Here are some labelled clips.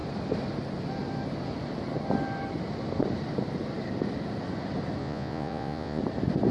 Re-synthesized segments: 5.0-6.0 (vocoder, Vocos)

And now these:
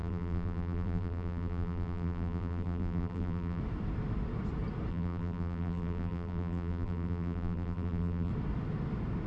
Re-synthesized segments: 0.0-3.6 (vocoder, BigVGAN v2); 4.9-8.3

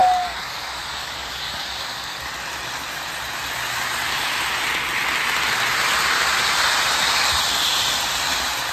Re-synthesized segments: 0.0-2.2 (codec, DAC)

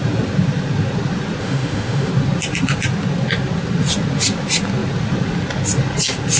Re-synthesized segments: 1.4-2.1 (autoencoder, DAC-VAE)

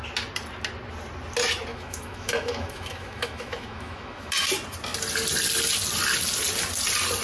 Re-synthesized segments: 1.7-4.3 (autoencoder, DAC-VAE)